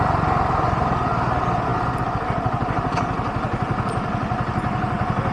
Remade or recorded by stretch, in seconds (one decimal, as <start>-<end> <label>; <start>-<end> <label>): 0.0-5.3 recorded